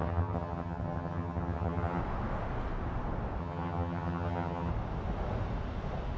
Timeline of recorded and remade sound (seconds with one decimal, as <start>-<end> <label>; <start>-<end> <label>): 0.0-2.0 remade; 2.0-3.4 recorded; 3.4-4.7 remade; 4.7-6.2 recorded